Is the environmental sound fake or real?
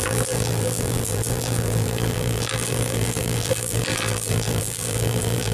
fake